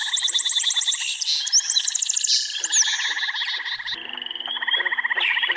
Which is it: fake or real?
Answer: real